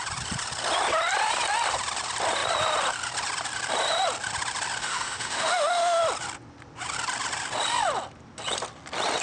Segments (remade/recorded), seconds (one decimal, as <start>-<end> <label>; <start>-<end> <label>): 0.0-4.8 recorded; 4.8-6.0 remade; 6.0-9.2 recorded